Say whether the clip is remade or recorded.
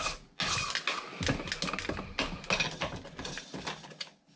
recorded